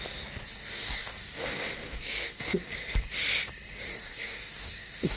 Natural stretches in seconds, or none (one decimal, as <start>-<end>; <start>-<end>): 0.0-0.5; 2.7-3.9